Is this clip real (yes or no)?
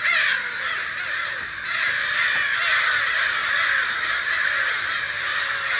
yes